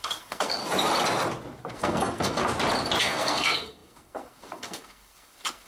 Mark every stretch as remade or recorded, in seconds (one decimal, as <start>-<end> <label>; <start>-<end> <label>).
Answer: 0.0-0.6 remade; 0.6-1.6 recorded; 1.6-2.4 remade; 2.4-3.0 recorded; 3.0-5.7 remade